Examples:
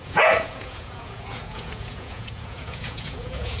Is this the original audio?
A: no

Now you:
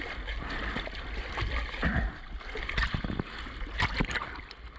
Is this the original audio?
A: yes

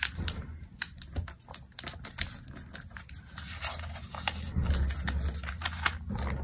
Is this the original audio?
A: yes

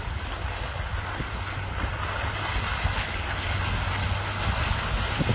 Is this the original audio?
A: yes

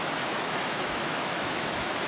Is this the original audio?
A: no